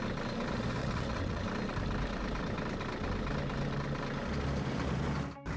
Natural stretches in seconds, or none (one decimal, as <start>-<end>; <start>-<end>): 0.0-0.8; 1.4-5.6